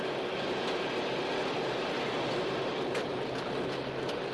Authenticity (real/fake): real